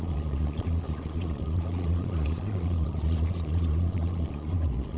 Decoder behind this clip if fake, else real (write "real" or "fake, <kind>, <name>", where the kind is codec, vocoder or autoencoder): fake, vocoder, Vocos